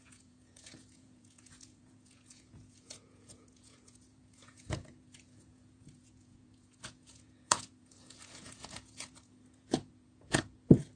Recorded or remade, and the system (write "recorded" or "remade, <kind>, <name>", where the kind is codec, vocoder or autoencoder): remade, vocoder, Vocos